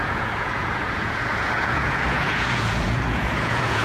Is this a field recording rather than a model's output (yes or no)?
no